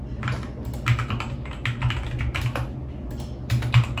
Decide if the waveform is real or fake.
real